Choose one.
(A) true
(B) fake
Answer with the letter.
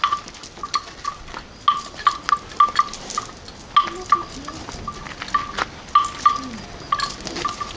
A